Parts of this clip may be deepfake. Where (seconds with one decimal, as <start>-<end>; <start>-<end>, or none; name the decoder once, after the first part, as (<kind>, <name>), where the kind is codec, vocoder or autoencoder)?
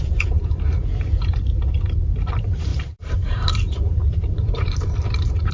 0.0-5.5 (vocoder, BigVGAN v2)